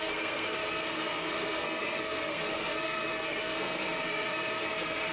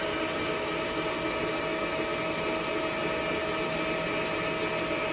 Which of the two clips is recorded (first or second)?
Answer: second